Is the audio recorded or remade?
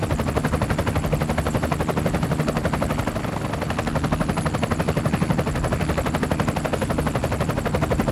recorded